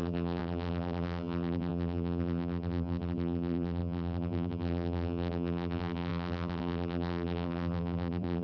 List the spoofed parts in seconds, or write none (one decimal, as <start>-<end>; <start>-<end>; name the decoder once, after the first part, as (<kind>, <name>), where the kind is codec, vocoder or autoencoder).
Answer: 0.0-8.4 (vocoder, BigVGAN v2)

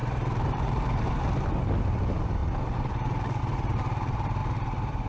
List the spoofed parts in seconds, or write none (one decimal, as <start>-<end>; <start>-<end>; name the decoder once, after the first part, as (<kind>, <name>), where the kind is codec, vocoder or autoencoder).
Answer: 0.0-4.4 (vocoder, BigVGAN v2)

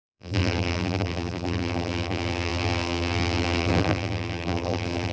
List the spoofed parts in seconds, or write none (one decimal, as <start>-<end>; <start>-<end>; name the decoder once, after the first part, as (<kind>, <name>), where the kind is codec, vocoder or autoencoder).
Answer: 0.0-5.1 (vocoder, BigVGAN v2)

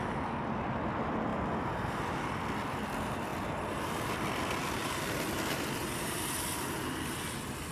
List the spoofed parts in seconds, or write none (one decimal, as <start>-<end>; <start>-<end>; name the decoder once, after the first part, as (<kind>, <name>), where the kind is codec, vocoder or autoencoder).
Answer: 1.3-1.9 (vocoder, BigVGAN v2); 3.3-4.3; 4.8-7.0

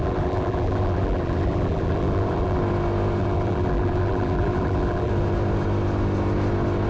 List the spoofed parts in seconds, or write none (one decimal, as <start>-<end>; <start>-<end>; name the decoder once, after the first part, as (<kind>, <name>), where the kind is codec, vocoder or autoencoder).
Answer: 0.0-2.6 (vocoder, BigVGAN v2); 3.2-5.1

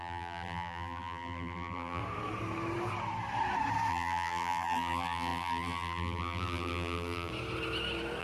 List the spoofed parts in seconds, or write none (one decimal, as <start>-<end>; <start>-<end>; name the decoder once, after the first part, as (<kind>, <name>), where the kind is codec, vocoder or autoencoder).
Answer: 0.0-2.0 (vocoder, BigVGAN v2); 3.9-7.3